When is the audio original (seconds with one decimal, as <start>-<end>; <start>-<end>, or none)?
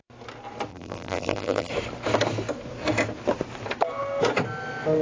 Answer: 0.0-0.7; 1.7-5.0